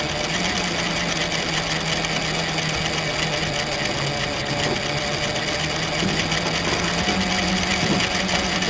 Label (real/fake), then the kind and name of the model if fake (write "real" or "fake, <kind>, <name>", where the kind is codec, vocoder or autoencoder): real